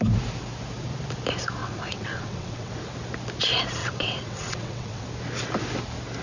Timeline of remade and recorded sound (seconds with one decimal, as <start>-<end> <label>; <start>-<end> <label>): 0.0-1.6 recorded; 1.6-2.7 remade; 2.7-3.8 recorded; 3.8-5.0 remade; 5.0-6.2 recorded